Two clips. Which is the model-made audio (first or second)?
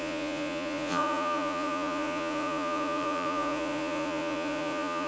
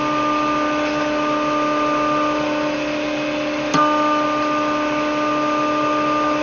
first